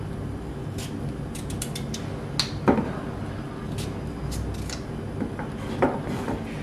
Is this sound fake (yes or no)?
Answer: no